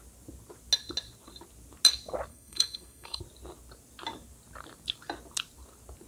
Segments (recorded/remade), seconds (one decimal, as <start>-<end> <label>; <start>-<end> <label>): 0.0-2.3 recorded; 2.3-3.2 remade; 3.2-6.1 recorded